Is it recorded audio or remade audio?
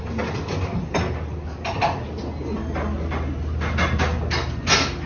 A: recorded